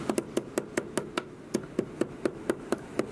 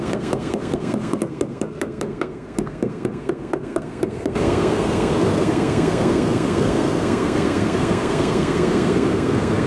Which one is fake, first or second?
second